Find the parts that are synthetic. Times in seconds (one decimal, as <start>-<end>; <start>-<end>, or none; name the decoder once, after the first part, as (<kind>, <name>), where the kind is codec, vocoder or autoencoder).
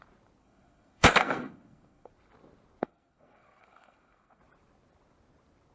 0.4-2.1 (codec, SNAC); 2.8-4.4